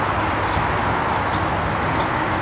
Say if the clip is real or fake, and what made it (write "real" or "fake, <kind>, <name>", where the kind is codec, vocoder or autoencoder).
real